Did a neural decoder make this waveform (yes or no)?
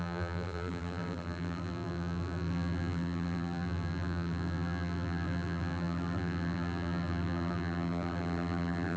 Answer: yes